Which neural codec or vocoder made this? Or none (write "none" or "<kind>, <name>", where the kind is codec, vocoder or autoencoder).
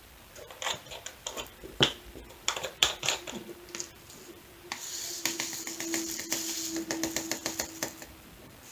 vocoder, BigVGAN v2